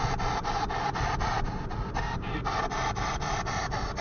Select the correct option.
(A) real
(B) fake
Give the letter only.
A